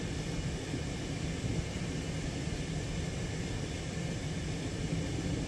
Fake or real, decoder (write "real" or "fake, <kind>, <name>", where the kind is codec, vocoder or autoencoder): real